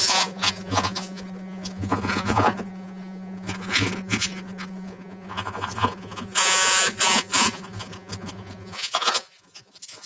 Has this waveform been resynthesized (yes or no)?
yes